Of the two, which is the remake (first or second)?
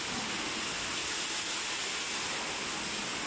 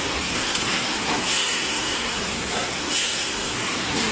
second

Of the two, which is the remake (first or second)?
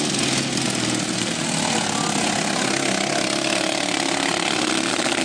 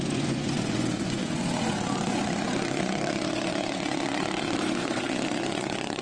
second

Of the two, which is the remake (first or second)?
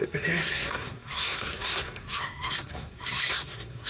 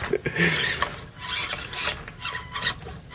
first